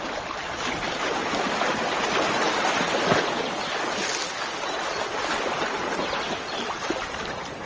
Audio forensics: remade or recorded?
remade